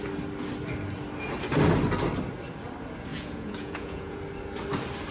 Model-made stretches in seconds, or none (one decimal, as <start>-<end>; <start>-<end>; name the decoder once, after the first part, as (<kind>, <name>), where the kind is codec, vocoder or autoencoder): 3.1-4.2 (vocoder, Vocos)